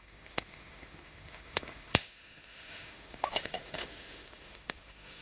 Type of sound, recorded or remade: remade